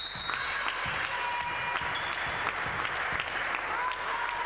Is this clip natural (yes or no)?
yes